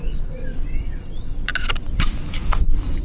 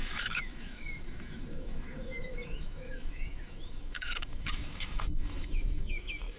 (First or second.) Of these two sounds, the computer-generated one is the second